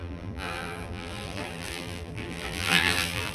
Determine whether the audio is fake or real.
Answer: fake